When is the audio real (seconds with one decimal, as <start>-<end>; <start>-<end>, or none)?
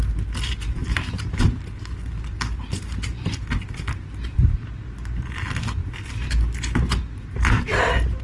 0.0-8.2